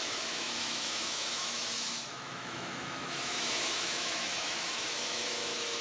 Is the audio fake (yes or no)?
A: yes